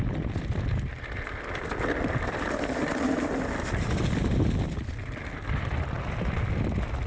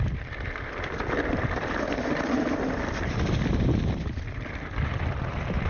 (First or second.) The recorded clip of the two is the first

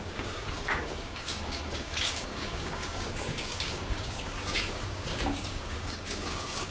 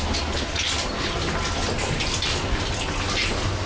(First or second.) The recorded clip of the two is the second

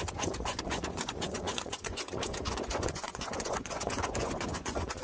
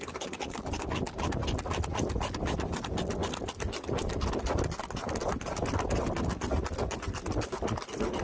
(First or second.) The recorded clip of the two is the second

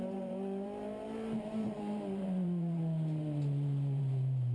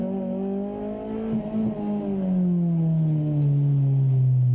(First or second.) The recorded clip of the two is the second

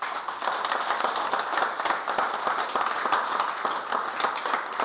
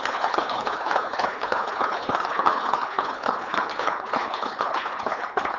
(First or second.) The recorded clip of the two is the first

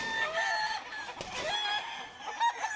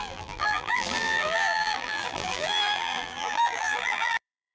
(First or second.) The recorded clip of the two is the first